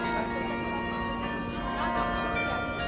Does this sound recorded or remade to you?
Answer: recorded